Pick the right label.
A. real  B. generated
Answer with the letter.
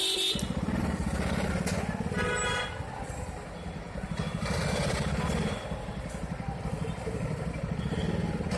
A